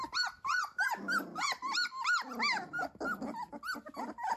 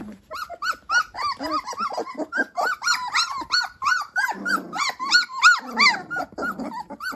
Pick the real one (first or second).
first